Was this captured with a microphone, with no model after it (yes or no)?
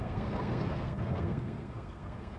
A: no